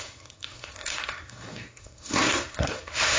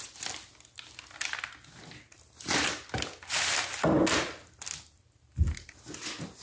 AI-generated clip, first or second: first